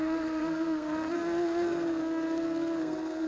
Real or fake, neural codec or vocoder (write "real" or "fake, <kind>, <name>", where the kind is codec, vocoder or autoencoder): fake, codec, SNAC